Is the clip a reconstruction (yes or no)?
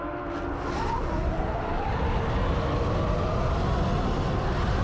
no